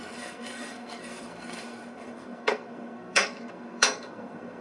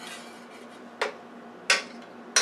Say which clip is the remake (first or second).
first